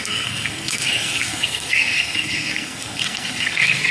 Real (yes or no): no